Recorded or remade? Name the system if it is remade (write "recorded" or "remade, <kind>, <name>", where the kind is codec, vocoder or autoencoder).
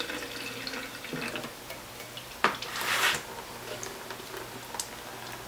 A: recorded